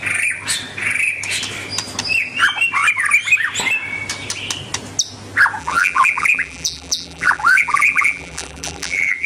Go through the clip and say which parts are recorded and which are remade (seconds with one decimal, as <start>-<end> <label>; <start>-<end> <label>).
0.0-5.6 recorded; 5.6-9.3 remade